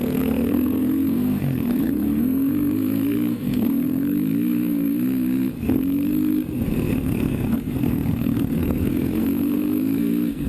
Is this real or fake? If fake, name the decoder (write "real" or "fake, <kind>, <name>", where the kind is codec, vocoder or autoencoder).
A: fake, codec, SNAC